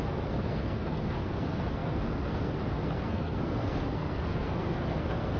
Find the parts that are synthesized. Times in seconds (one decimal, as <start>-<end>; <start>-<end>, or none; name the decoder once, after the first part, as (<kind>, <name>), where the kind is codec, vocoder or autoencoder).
0.0-5.4 (codec, SNAC)